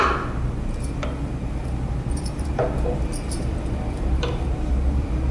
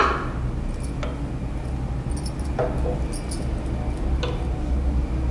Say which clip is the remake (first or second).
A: first